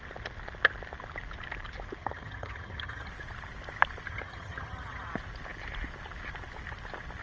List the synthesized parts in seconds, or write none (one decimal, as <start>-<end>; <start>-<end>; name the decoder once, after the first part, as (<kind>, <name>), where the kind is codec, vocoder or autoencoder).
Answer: 2.0-3.1 (vocoder, HiFi-GAN); 4.1-5.1